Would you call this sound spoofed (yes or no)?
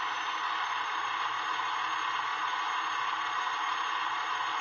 no